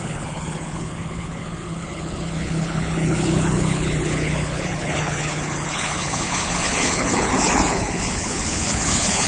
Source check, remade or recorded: remade